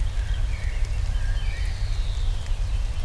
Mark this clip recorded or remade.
recorded